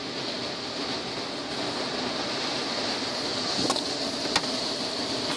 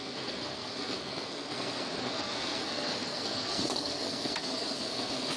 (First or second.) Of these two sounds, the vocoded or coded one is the second